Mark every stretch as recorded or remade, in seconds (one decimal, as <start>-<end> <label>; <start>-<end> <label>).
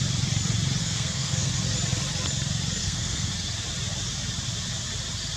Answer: 0.0-0.8 recorded; 0.8-1.5 remade; 1.5-2.8 recorded; 2.8-3.3 remade; 3.3-5.4 recorded